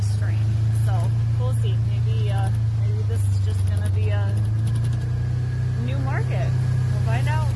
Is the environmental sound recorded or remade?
recorded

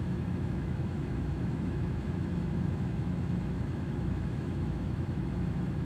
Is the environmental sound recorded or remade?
remade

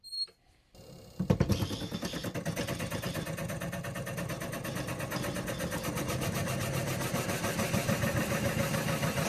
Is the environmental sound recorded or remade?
recorded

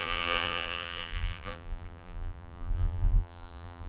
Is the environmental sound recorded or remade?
remade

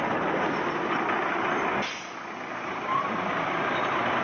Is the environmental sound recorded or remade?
recorded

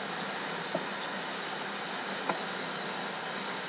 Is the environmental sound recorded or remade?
recorded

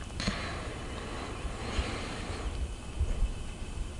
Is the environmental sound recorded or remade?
recorded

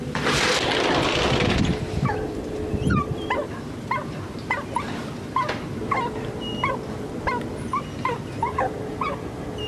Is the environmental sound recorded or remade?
remade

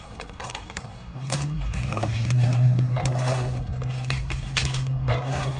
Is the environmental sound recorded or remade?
remade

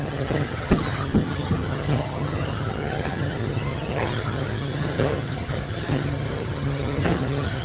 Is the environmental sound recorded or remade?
remade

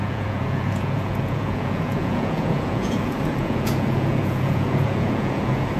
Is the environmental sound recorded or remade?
remade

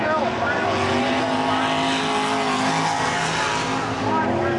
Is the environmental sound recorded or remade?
recorded